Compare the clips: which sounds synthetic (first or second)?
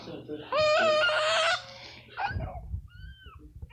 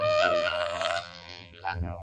second